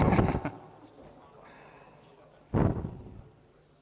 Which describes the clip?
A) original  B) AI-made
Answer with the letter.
A